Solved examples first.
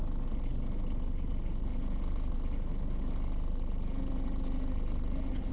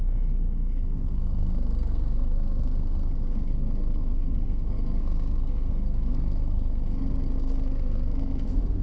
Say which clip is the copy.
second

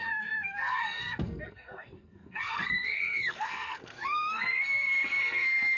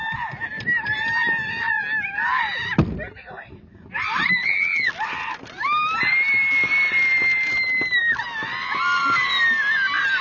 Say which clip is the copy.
first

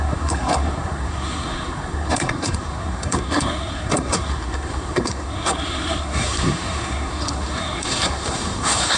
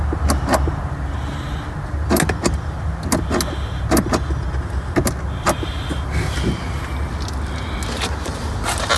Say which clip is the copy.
first